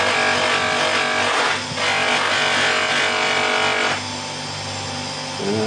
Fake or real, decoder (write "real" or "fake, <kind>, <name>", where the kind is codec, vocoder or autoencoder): real